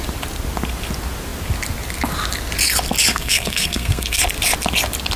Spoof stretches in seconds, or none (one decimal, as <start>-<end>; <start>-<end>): 3.1-4.2